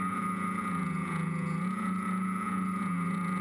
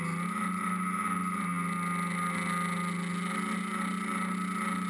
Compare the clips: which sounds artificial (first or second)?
first